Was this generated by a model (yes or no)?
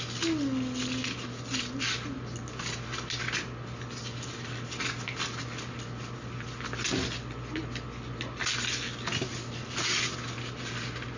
no